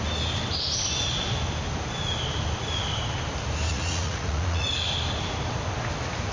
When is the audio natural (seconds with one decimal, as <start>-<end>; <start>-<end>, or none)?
0.0-3.7; 4.7-6.3